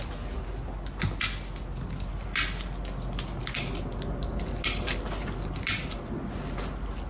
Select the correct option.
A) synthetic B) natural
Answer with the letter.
B